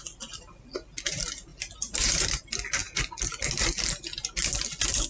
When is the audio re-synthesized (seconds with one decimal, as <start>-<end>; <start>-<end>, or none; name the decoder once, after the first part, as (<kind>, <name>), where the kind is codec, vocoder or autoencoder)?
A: 1.5-2.4 (vocoder, BigVGAN v2)